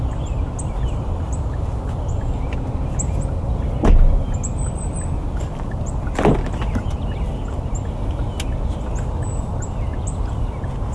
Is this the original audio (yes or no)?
yes